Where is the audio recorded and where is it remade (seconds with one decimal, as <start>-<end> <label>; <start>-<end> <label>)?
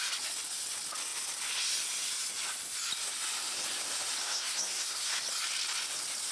0.0-4.2 recorded; 4.2-5.2 remade; 5.2-6.3 recorded